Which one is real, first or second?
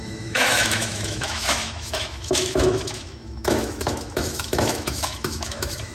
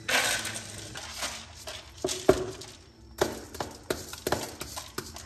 second